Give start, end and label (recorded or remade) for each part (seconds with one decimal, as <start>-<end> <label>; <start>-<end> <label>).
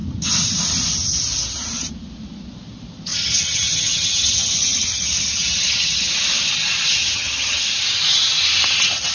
0.0-3.1 recorded; 3.1-6.1 remade; 6.1-7.0 recorded; 7.0-7.6 remade; 7.6-9.1 recorded